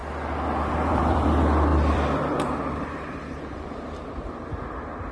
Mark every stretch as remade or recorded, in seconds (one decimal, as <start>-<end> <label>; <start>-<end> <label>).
0.0-0.6 recorded; 0.6-5.1 remade